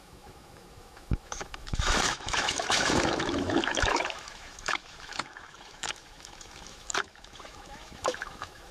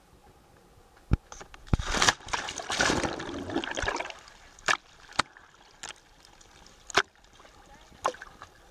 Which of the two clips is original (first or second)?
second